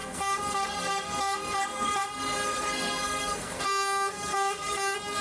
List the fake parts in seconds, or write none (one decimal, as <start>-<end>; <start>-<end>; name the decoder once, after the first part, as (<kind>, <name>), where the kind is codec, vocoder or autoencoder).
0.0-5.2 (codec, SNAC)